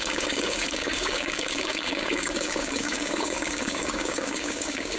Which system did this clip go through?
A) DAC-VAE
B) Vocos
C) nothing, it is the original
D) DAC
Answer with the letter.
D